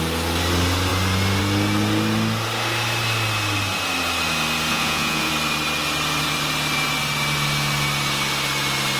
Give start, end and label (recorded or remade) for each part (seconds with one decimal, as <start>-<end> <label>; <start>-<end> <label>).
0.0-4.7 recorded; 4.7-5.3 remade; 5.3-9.0 recorded